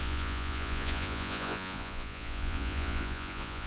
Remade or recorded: remade